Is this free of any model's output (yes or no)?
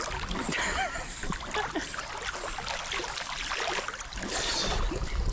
yes